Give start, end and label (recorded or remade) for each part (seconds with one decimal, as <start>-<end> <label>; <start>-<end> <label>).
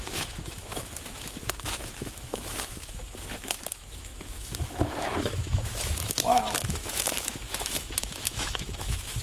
0.0-9.2 remade